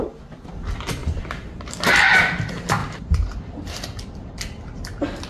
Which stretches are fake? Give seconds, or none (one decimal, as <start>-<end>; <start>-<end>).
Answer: 1.0-1.7; 2.8-3.4

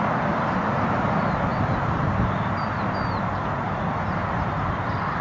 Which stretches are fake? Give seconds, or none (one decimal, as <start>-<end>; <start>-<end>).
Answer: none

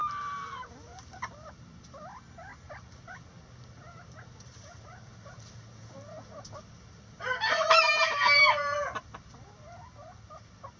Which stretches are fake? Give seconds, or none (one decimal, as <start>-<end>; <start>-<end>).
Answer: 8.1-9.0